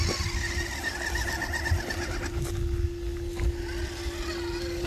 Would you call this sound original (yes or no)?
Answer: yes